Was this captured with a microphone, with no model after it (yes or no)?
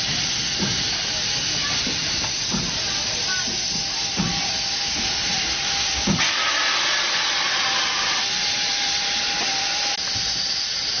yes